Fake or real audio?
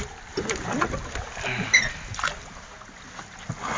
real